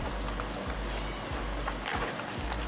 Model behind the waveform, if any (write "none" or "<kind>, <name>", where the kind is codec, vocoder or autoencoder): none